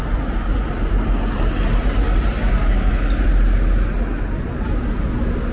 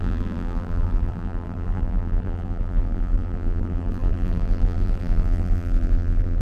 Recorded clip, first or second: first